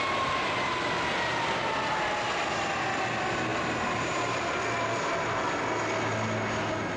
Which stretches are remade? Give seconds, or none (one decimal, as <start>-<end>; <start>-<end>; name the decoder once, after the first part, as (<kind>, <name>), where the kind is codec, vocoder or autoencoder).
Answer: 3.5-4.5 (vocoder, BigVGAN v2)